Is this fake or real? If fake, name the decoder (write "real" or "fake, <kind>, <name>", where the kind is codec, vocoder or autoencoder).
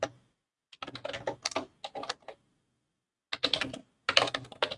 real